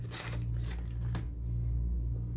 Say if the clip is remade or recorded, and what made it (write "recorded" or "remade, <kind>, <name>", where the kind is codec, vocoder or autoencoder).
recorded